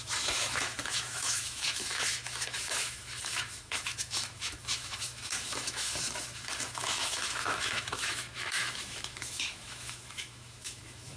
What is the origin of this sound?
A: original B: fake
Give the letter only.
B